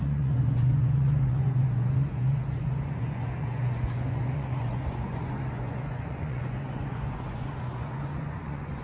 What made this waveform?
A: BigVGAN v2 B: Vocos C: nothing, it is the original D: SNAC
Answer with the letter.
B